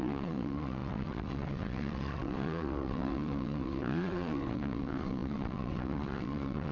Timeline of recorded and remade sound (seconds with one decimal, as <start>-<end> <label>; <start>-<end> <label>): 0.0-6.7 remade